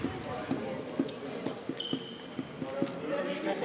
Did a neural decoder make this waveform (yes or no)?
no